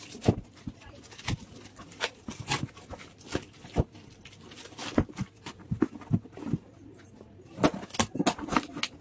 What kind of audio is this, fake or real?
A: real